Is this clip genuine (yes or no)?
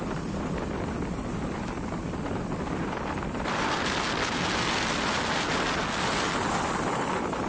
yes